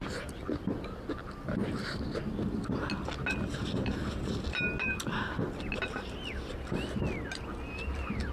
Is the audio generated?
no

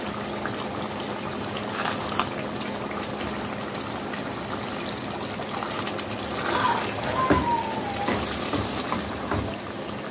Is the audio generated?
no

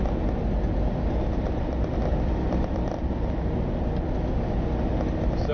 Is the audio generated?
no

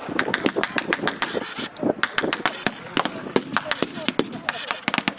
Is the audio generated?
no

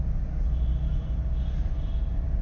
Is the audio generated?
no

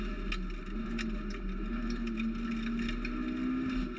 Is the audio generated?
no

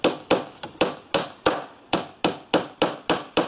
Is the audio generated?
no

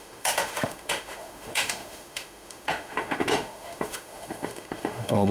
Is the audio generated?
yes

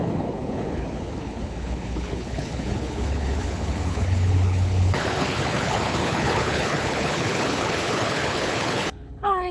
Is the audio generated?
yes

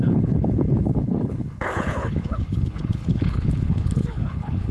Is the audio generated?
yes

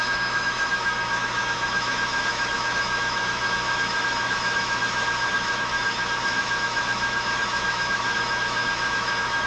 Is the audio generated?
yes